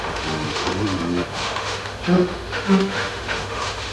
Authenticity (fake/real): fake